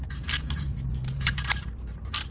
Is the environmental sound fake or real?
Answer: fake